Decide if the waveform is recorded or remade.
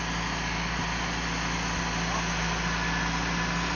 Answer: recorded